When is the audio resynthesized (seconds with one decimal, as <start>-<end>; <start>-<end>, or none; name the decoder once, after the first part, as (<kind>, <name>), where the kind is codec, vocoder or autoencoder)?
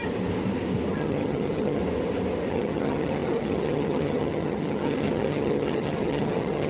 0.9-1.8 (vocoder, HiFi-GAN); 2.5-6.7